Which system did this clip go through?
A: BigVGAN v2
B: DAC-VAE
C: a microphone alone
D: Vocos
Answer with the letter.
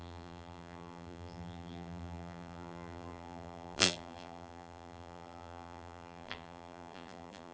A